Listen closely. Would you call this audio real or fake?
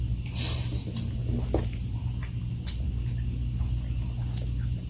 real